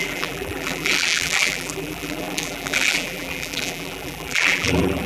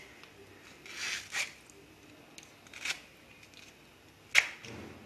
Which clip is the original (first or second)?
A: second